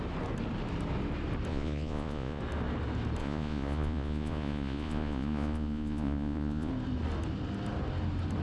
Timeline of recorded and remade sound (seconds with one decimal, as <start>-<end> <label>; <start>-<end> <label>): 0.0-1.5 recorded; 1.5-2.4 remade; 2.4-3.2 recorded; 3.2-6.7 remade; 6.7-8.4 recorded